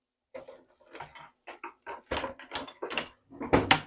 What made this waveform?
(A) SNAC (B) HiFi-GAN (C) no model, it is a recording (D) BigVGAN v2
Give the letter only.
C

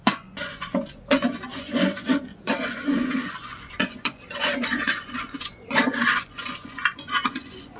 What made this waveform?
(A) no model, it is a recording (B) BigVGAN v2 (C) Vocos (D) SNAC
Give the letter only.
C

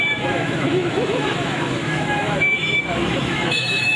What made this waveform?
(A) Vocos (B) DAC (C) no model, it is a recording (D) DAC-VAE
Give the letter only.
D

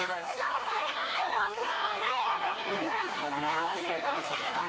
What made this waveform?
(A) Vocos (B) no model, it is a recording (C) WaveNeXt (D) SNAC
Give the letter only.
D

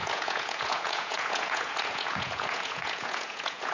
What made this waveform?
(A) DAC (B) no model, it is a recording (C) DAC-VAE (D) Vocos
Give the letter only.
D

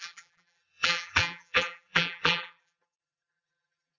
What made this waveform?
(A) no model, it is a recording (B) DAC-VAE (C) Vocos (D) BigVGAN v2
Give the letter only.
D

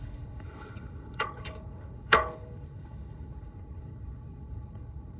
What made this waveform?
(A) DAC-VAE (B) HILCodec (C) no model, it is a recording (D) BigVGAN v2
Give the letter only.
B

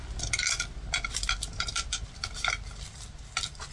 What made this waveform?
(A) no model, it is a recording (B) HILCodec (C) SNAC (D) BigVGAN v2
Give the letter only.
A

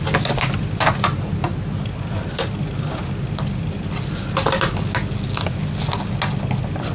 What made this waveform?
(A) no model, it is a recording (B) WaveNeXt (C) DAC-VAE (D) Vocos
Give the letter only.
A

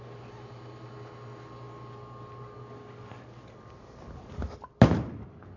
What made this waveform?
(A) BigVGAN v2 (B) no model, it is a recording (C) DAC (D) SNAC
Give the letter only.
B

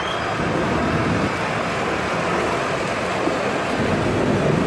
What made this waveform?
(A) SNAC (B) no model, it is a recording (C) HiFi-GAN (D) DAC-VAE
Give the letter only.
B